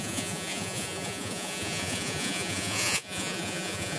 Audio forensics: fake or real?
fake